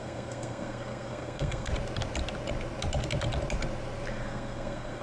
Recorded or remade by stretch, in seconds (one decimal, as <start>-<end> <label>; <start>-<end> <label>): 0.0-1.7 remade; 1.7-4.1 recorded; 4.1-5.0 remade